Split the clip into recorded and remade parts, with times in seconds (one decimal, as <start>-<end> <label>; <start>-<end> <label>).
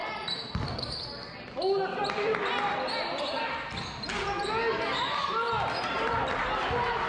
0.0-7.1 recorded